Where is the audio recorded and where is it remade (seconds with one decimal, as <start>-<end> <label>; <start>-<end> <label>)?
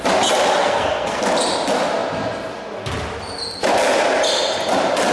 0.0-0.6 recorded; 0.6-1.2 remade; 1.2-5.1 recorded